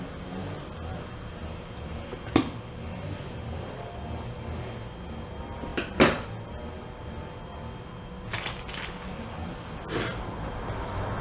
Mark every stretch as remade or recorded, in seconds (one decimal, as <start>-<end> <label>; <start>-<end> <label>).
0.0-11.2 recorded